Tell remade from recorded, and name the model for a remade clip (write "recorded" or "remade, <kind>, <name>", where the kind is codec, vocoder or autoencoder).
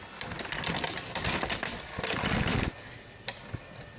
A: recorded